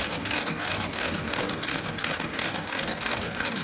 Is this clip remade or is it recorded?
remade